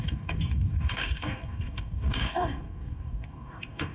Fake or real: fake